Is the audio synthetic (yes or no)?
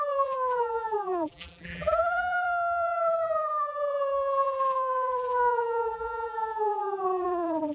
yes